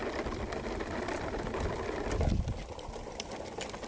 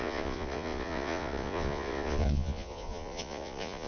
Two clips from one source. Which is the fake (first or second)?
second